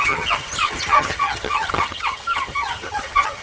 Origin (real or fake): fake